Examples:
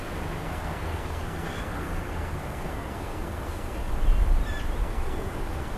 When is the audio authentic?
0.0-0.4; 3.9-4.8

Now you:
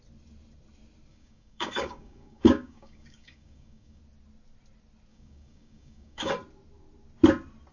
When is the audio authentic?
0.0-1.1; 4.0-5.1; 6.3-7.7

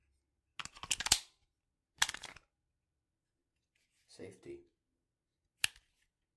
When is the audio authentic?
0.0-6.4

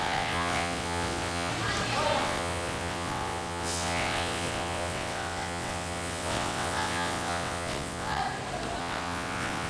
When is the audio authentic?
1.5-2.2; 8.2-8.8

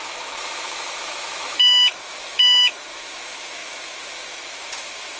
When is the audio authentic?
none

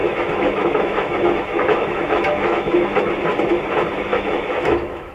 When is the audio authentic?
3.1-4.1